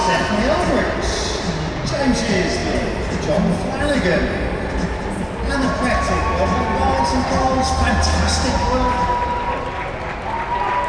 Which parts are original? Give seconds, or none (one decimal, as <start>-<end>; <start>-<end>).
0.0-10.9